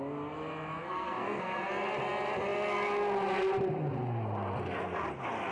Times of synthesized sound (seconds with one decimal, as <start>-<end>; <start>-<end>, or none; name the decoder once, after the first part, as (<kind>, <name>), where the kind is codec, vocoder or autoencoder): 0.8-1.7 (codec, SNAC)